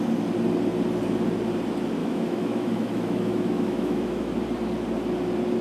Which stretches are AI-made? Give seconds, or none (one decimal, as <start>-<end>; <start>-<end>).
2.0-4.3